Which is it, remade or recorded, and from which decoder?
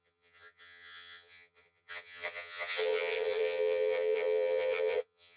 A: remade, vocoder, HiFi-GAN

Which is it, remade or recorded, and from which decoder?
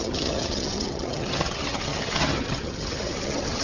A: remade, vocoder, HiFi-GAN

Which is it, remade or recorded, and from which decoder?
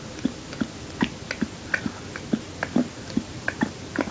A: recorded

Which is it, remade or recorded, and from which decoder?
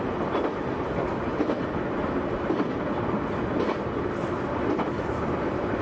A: recorded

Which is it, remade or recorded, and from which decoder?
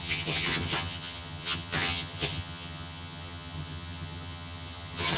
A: remade, vocoder, HiFi-GAN